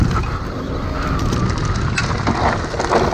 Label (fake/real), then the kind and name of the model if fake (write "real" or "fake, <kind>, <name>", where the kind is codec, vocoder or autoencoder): real